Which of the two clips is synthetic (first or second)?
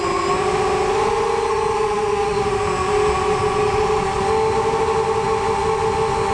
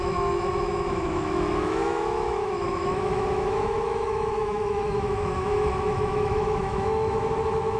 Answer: second